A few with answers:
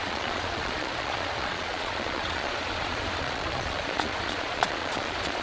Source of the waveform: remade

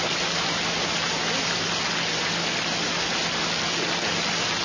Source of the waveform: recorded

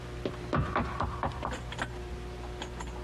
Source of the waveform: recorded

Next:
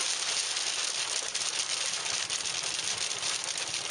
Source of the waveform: recorded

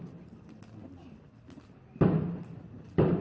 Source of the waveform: recorded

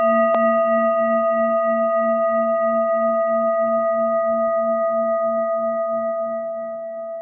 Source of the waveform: recorded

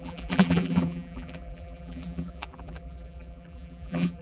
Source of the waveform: remade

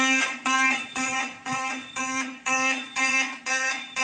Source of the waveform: remade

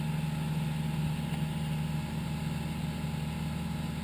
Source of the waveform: recorded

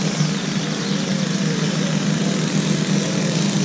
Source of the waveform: recorded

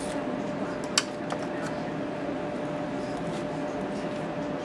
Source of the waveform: recorded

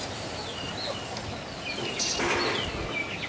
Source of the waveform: recorded